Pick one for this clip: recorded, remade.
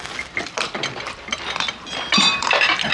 remade